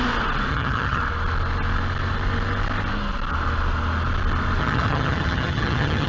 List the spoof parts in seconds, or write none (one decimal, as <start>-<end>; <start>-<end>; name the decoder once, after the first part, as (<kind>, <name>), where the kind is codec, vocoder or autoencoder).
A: 0.5-1.0 (vocoder, HiFi-GAN); 4.6-6.1